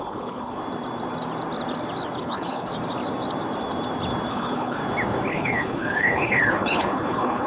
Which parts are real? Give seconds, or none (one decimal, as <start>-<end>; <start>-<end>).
0.6-2.2; 2.7-4.3; 4.8-5.3